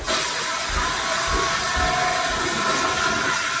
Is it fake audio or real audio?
real